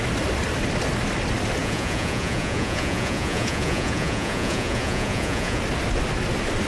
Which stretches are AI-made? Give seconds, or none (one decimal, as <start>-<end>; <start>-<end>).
1.6-5.6